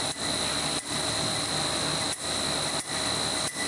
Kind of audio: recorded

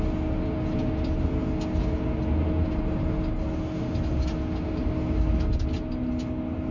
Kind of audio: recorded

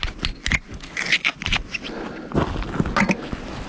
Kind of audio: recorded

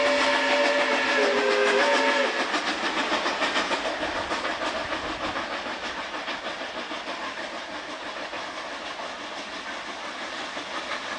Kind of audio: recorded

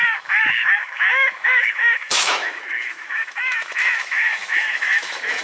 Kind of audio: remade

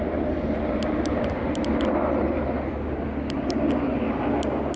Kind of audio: recorded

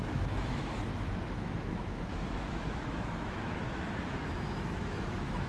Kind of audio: remade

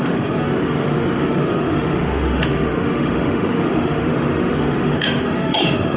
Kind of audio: remade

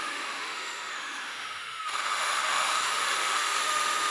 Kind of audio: remade